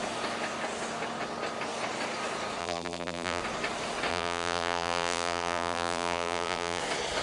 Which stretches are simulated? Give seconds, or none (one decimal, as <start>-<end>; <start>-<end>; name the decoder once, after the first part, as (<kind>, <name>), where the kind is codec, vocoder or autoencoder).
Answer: 2.6-3.4 (vocoder, BigVGAN v2); 4.1-6.8